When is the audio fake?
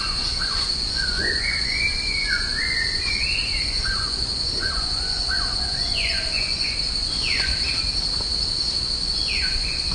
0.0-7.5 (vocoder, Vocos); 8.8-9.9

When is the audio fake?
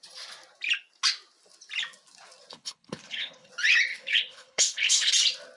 2.5-3.5 (codec, HILCodec); 3.9-5.1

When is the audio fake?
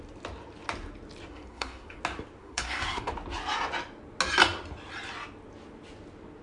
1.3-2.0 (codec, SNAC); 2.4-3.1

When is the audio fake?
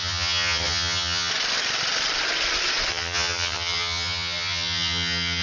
0.0-1.3 (vocoder, HiFi-GAN); 2.9-5.4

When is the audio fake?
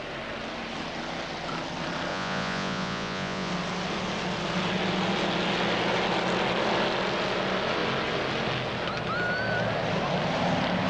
2.1-3.5 (vocoder, Vocos)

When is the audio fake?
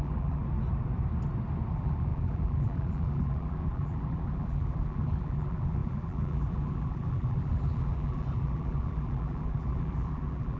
0.0-0.4 (vocoder, BigVGAN v2); 1.7-10.6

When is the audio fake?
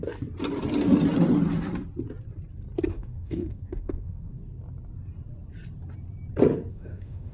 2.9-4.4 (autoencoder, DAC-VAE); 6.7-7.3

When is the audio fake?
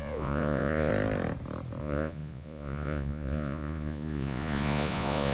0.0-0.9 (vocoder, Vocos); 1.8-5.3